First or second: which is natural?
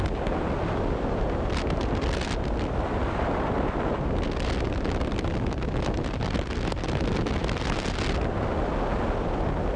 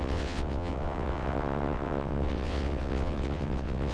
first